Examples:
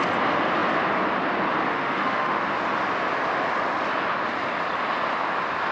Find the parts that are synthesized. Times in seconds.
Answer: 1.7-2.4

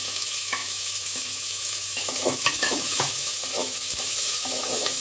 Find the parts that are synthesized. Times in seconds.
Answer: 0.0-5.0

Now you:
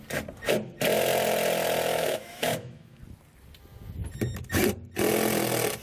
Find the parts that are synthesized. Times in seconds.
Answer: 1.9-3.0

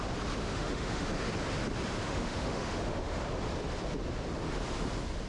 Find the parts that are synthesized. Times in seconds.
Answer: 0.4-1.1; 2.0-3.2

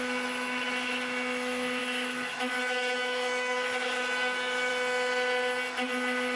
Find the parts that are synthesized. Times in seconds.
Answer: 0.0-4.7

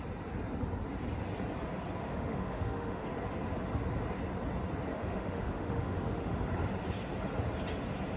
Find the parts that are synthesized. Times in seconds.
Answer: 2.0-3.0; 4.9-6.4